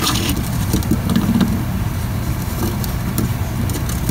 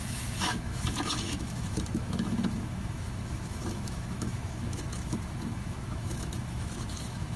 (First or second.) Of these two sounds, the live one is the first